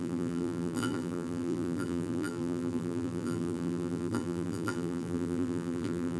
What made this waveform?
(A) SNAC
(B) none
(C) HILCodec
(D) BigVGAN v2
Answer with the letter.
D